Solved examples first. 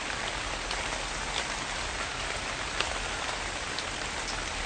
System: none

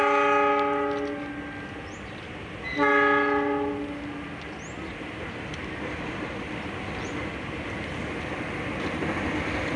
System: none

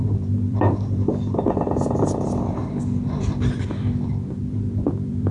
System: vocoder, BigVGAN v2